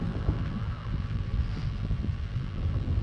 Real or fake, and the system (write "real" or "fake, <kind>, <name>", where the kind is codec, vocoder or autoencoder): fake, vocoder, BigVGAN v2